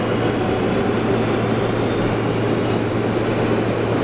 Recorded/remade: recorded